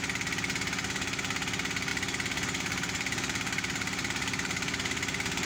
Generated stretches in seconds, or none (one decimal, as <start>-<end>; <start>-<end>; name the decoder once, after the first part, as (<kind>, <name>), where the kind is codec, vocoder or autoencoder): 1.9-5.5 (vocoder, BigVGAN v2)

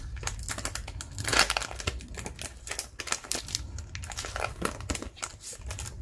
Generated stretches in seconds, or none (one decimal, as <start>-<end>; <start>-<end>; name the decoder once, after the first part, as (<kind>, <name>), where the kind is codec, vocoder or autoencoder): none

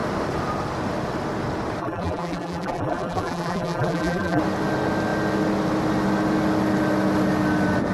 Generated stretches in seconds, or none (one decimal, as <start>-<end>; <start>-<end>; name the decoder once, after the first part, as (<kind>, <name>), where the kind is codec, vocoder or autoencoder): 1.8-4.4 (vocoder, BigVGAN v2)

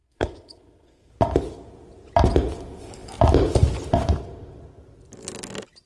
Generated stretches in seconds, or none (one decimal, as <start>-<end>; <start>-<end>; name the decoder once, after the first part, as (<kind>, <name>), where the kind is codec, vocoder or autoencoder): 0.0-1.1 (codec, SNAC)

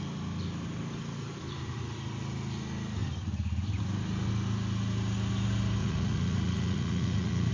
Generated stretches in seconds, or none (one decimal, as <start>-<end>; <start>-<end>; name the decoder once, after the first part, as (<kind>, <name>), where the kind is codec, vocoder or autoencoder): 5.8-7.5 (vocoder, Vocos)

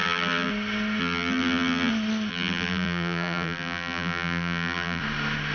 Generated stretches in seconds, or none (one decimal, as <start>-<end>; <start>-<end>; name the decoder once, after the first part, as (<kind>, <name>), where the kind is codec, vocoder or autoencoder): 0.0-0.5 (vocoder, BigVGAN v2); 1.0-1.9; 2.3-5.0

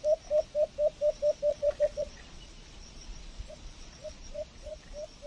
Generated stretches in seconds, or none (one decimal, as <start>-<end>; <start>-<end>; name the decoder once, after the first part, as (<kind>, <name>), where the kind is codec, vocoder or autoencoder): 1.5-4.7 (vocoder, Vocos)